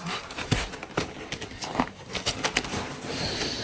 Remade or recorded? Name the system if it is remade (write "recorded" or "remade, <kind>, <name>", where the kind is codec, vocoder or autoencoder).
recorded